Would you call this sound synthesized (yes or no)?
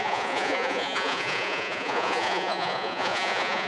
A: yes